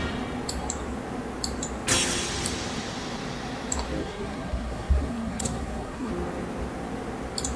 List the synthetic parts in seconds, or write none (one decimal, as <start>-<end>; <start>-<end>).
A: 4.0-6.1